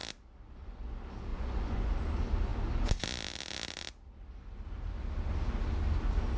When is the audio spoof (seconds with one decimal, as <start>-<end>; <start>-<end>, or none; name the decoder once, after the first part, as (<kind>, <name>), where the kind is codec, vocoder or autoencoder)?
1.3-1.9 (vocoder, Vocos)